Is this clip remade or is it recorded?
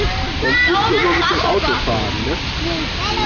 recorded